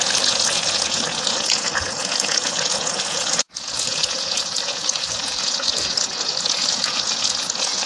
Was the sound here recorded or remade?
remade